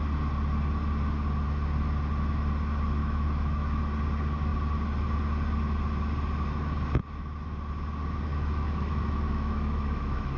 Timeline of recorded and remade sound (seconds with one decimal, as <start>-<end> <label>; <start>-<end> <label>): 0.0-3.0 recorded; 3.0-3.8 remade; 3.8-8.3 recorded; 8.3-10.4 remade